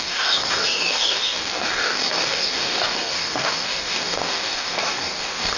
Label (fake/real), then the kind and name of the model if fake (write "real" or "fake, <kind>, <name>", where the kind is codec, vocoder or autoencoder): fake, codec, DAC